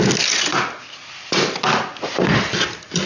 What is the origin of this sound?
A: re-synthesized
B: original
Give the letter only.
B